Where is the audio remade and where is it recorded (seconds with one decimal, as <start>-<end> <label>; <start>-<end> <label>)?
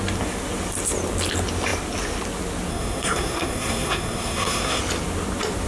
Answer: 0.0-2.7 recorded; 2.7-4.8 remade; 4.8-5.7 recorded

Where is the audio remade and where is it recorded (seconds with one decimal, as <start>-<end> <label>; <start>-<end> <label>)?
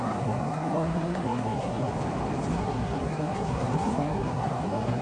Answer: 0.0-1.9 remade; 1.9-2.5 recorded; 2.5-5.0 remade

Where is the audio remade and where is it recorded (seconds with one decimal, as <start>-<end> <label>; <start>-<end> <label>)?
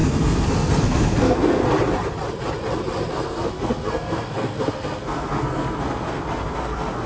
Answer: 0.0-1.6 remade; 1.6-3.1 recorded; 3.1-7.1 remade